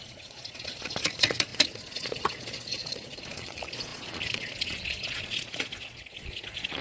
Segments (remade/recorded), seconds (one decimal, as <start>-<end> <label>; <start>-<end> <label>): 0.0-6.8 remade